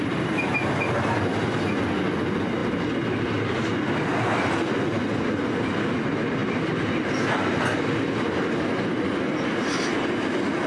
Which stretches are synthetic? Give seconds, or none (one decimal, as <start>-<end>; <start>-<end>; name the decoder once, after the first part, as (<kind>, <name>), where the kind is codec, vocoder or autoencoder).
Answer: 6.4-7.4 (vocoder, BigVGAN v2)

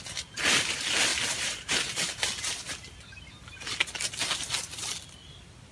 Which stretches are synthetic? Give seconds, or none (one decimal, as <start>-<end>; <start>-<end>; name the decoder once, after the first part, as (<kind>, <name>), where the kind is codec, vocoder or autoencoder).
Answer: none

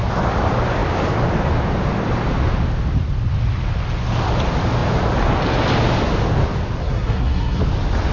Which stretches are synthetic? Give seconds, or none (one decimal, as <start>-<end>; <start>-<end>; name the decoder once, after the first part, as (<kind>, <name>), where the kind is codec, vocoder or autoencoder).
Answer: 6.8-7.6 (codec, SNAC)

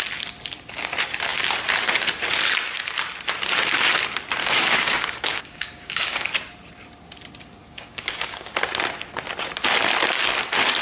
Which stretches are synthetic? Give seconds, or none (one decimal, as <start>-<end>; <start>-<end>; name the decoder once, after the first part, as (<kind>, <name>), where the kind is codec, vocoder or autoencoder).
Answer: 4.4-6.3 (codec, DAC); 7.6-8.5

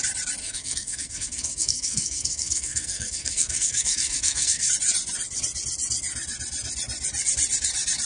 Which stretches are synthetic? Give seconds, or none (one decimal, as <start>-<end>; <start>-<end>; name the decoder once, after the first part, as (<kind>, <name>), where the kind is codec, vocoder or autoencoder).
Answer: 0.4-4.7 (codec, SNAC)

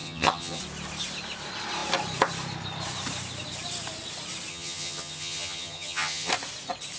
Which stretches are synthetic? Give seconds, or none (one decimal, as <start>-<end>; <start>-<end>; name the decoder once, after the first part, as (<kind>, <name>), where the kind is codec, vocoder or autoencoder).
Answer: 0.0-0.6 (vocoder, HiFi-GAN); 4.5-6.3